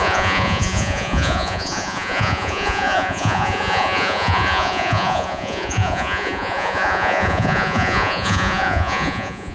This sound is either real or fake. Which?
fake